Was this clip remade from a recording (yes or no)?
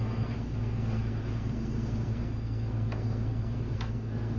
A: yes